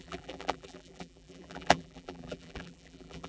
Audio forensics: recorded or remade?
remade